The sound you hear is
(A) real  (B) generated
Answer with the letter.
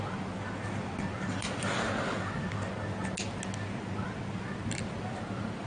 A